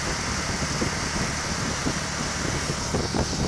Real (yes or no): yes